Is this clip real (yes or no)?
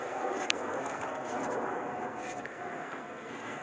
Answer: no